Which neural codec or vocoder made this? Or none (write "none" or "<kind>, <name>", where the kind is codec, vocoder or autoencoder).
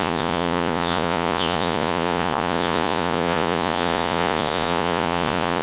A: vocoder, Vocos